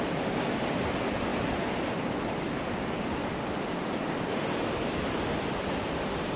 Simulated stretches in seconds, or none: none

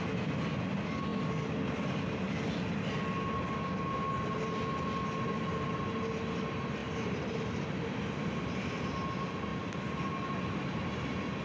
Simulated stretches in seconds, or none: none